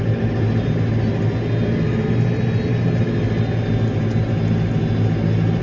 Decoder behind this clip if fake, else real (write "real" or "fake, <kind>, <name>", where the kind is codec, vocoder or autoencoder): real